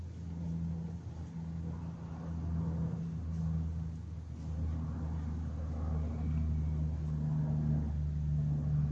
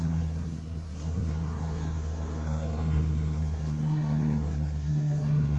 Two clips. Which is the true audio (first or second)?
first